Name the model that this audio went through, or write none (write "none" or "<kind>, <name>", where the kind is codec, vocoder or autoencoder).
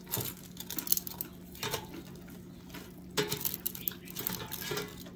none